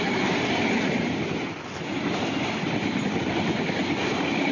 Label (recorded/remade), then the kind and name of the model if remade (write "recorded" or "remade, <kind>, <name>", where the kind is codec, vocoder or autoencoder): recorded